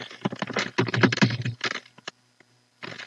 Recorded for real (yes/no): yes